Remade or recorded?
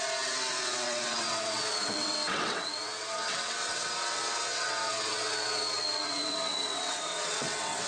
remade